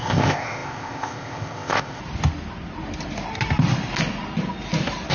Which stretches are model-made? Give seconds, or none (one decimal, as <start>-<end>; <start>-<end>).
0.0-2.0